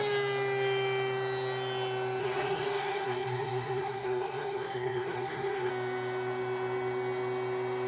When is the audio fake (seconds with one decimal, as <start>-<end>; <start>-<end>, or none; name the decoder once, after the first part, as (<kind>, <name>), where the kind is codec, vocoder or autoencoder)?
2.2-5.7 (codec, SNAC)